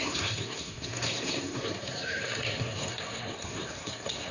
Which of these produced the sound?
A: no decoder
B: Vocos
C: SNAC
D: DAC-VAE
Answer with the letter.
C